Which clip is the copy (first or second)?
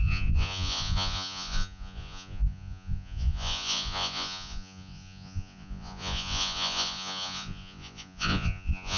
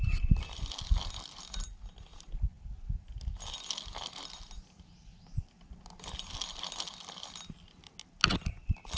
first